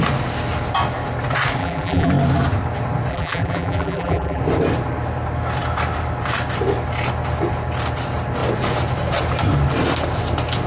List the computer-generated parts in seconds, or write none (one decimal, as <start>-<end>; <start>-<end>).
1.6-2.1; 3.1-4.4